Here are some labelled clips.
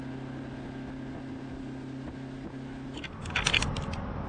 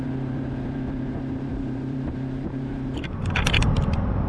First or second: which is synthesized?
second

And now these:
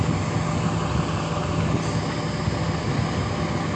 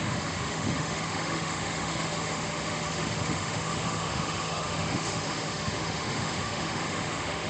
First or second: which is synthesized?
second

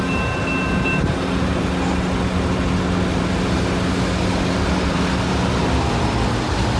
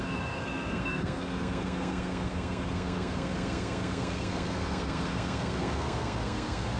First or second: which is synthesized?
second